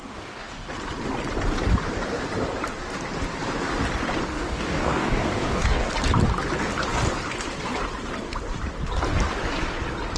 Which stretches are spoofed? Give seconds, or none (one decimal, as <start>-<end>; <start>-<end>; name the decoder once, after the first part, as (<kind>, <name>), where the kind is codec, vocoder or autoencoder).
0.0-0.5 (codec, DAC); 4.3-5.9